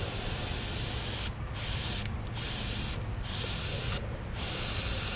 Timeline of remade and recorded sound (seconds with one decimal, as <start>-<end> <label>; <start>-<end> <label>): 0.0-5.2 recorded